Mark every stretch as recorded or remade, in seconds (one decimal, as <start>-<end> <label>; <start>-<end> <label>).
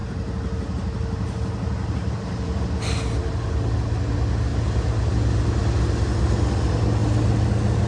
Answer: 0.0-7.9 recorded